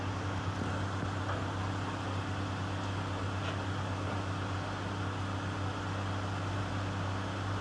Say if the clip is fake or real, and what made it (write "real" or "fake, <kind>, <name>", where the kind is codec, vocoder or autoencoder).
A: real